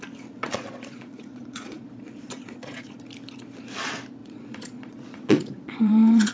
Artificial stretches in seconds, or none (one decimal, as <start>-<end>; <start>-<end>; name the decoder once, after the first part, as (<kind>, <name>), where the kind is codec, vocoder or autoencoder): 0.4-3.0 (vocoder, Vocos); 4.2-6.3